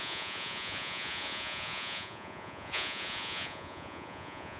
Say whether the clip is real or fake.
fake